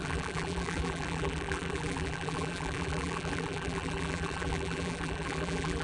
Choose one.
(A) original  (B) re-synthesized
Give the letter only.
B